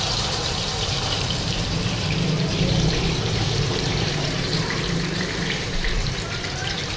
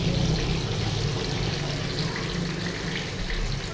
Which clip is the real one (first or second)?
second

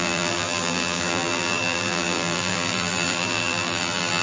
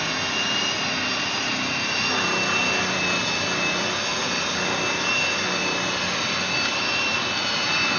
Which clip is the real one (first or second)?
second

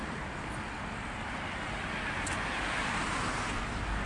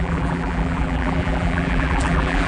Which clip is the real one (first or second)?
first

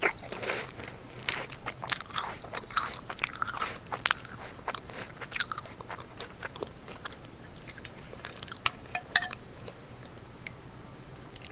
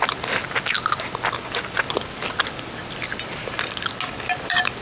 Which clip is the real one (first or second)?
second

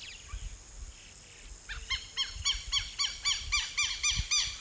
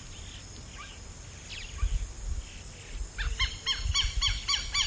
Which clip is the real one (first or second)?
first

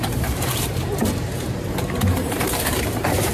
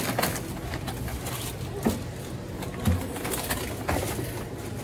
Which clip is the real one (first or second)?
second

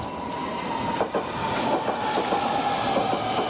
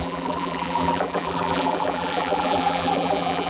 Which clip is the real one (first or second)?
first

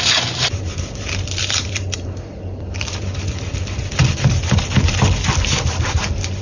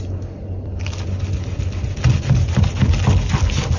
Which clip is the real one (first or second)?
second